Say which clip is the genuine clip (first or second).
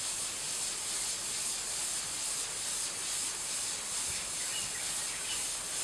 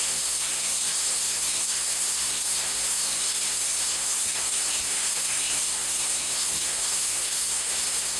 first